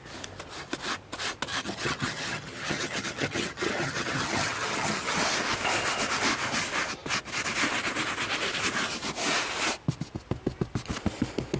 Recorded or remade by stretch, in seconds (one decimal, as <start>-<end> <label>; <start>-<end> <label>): 0.0-1.5 recorded; 1.5-5.2 remade; 5.2-11.6 recorded